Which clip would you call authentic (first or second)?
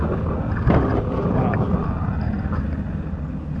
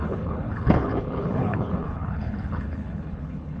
first